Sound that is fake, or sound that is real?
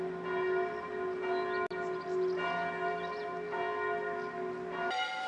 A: real